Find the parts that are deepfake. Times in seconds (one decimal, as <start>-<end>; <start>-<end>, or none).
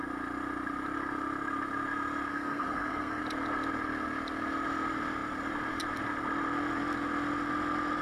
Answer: 2.3-3.2